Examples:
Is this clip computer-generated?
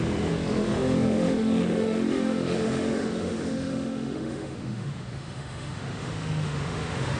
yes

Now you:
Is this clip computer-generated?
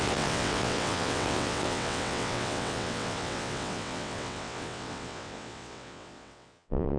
yes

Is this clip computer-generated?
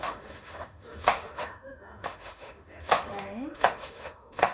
yes